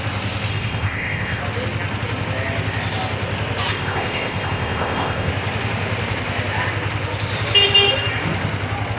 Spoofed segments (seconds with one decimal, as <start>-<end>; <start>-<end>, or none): 0.5-1.4; 3.7-5.3